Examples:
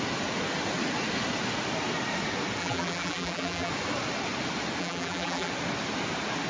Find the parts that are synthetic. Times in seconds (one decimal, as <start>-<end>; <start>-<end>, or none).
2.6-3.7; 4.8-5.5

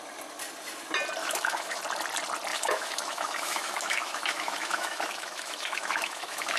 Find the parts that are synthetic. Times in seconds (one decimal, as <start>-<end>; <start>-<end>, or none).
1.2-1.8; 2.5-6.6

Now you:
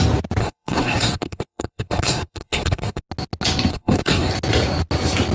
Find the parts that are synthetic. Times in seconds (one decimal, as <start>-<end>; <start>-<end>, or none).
0.4-3.0; 3.7-4.3

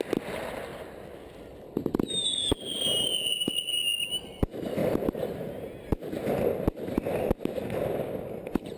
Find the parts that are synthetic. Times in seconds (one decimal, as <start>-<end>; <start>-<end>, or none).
4.8-6.3

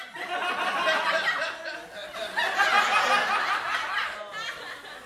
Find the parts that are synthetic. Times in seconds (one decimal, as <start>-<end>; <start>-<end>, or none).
none

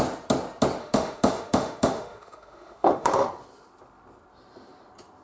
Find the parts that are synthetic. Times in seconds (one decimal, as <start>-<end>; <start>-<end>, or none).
0.8-3.3

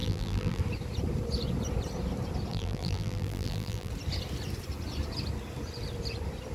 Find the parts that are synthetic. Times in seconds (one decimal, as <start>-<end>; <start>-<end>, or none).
0.0-0.6; 2.5-3.9

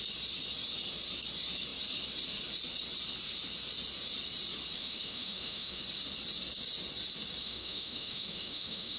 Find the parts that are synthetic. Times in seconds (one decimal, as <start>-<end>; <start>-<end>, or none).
4.8-5.8; 7.4-9.0